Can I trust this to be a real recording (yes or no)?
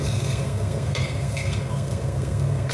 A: no